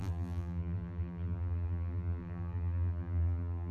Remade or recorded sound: remade